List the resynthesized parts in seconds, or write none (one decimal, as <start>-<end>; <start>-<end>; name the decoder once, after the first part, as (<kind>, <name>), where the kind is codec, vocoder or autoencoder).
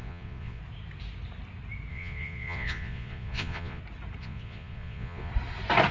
0.0-0.6 (vocoder, Vocos); 1.9-3.8; 4.2-5.3